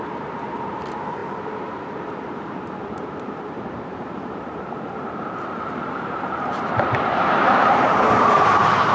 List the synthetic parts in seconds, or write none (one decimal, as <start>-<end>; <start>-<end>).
0.0-8.9